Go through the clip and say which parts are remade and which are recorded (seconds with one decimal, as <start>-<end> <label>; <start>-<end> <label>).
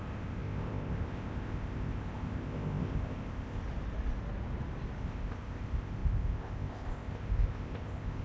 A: 0.0-3.6 remade; 3.6-5.0 recorded; 5.0-8.2 remade